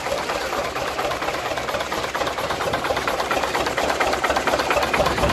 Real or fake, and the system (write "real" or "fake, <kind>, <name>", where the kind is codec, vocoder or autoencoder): fake, vocoder, BigVGAN v2